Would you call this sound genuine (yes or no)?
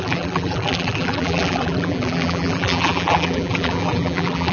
no